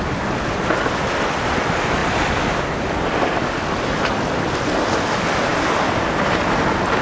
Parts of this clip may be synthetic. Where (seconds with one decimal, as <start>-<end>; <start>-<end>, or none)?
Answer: 5.5-6.4